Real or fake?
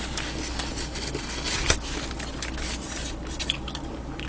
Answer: real